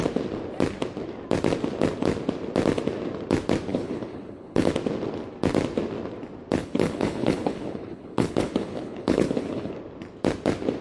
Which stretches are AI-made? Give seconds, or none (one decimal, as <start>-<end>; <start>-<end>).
3.7-4.7; 6.6-9.7

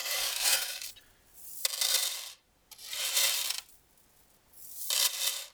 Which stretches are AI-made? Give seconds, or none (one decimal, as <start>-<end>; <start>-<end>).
0.0-0.9

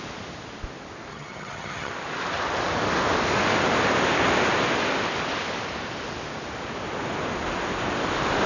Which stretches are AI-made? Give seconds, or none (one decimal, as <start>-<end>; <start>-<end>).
1.1-1.9

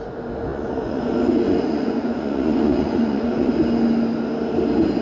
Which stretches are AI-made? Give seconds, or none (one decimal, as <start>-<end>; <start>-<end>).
0.5-3.5

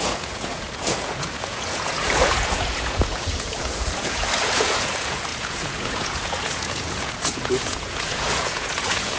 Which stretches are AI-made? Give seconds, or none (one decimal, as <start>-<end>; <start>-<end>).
0.0-9.2

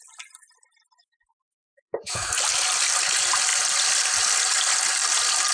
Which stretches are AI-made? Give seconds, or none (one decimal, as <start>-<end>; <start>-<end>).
1.0-2.3